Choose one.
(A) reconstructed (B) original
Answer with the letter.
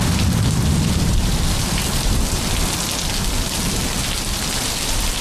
B